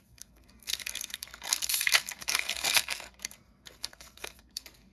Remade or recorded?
remade